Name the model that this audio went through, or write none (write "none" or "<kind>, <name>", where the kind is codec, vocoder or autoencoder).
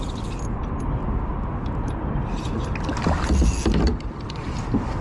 none